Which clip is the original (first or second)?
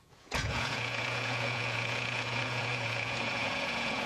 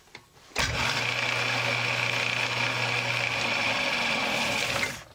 second